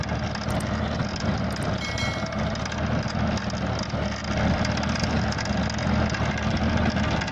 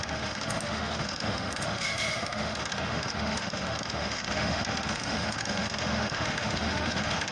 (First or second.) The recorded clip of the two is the first